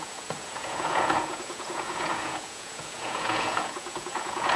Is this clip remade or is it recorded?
remade